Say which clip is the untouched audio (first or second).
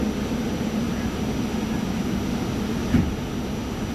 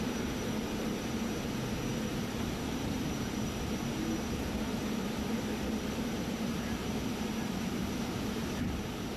first